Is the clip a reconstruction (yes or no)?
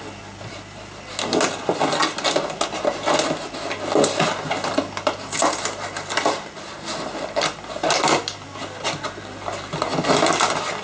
no